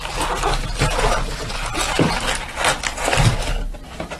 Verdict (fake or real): real